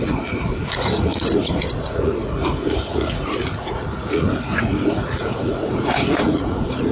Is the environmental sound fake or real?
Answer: fake